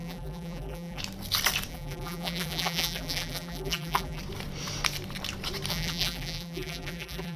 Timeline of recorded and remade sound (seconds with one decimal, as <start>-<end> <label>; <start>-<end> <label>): 0.0-1.0 remade; 1.0-1.7 recorded; 1.7-4.2 remade; 4.2-5.7 recorded; 5.7-7.4 remade